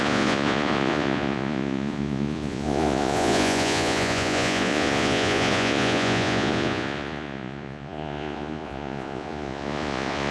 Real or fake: fake